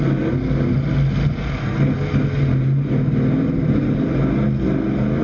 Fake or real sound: real